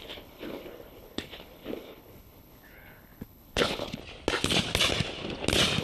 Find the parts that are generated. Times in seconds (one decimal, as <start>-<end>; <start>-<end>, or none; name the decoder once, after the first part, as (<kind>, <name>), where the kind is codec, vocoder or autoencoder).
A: 0.0-4.0 (codec, HILCodec)